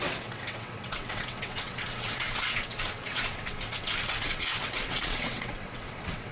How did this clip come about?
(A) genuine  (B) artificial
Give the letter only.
B